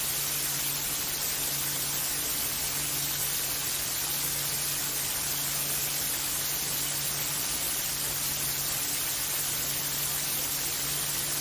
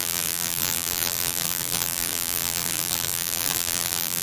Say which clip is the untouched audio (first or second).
first